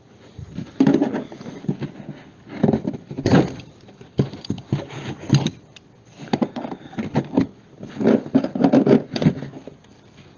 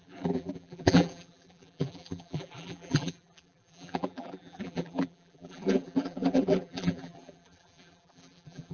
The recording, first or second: first